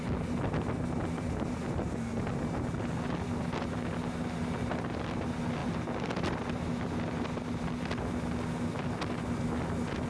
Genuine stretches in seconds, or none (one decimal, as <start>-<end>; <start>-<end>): 0.0-10.1